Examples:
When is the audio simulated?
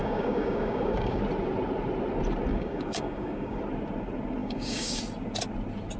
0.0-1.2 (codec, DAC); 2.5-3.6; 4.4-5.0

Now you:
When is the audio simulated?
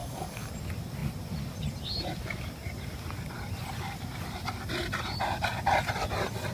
0.0-0.5 (codec, DAC)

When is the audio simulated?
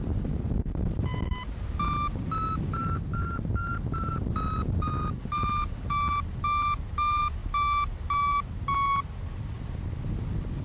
none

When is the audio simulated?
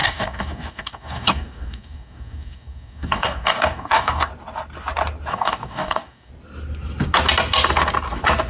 0.0-4.3 (codec, DAC); 5.3-6.3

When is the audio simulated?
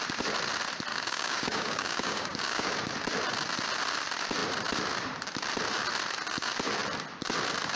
0.9-2.7 (codec, DAC)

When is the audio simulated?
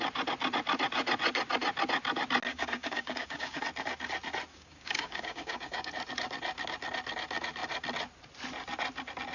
2.5-3.6 (codec, DAC); 4.5-5.9